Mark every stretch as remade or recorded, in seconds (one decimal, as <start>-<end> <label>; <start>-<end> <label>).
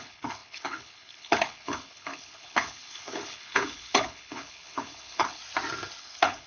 0.0-5.4 remade; 5.4-6.0 recorded; 6.0-6.5 remade